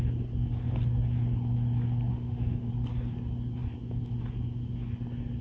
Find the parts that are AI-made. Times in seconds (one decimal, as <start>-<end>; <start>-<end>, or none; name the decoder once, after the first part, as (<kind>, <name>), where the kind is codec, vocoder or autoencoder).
2.1-2.7 (autoencoder, DAC-VAE)